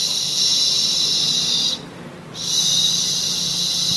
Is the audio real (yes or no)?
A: yes